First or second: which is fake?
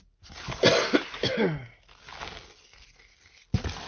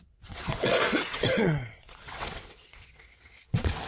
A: second